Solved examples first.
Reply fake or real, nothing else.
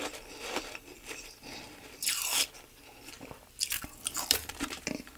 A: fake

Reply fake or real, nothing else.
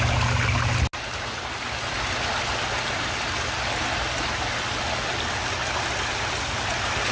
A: real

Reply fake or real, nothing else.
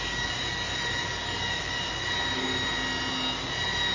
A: real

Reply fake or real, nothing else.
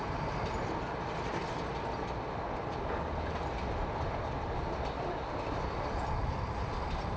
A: real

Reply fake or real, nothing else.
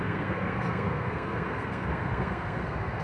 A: fake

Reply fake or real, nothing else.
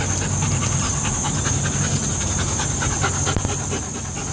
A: real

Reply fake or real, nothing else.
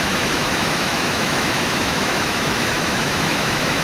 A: fake